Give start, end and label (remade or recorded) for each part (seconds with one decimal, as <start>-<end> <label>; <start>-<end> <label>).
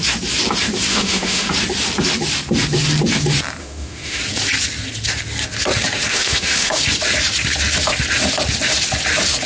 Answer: 0.0-0.9 recorded; 0.9-1.5 remade; 1.5-3.6 recorded; 3.6-4.2 remade; 4.2-6.1 recorded; 6.1-6.8 remade; 6.8-9.5 recorded